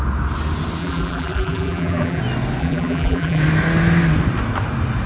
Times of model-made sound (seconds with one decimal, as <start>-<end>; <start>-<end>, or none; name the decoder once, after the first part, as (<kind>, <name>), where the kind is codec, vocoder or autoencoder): 0.8-2.2 (vocoder, BigVGAN v2); 2.6-3.4